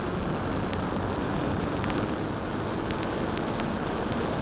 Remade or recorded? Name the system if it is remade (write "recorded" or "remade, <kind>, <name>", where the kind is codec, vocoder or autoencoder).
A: recorded